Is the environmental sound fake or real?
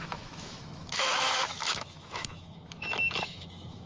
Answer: fake